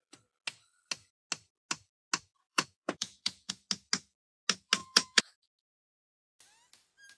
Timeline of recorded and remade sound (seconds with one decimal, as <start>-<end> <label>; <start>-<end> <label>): 0.0-2.5 recorded; 2.5-3.5 remade; 3.5-4.8 recorded; 4.8-5.3 remade; 5.3-7.2 recorded